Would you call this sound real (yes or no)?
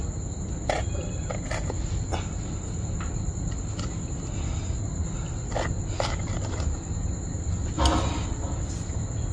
yes